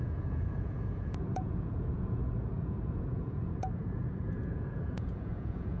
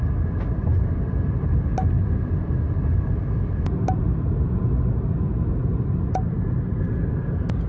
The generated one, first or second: first